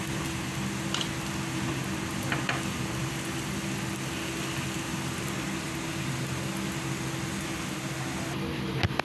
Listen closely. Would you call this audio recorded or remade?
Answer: recorded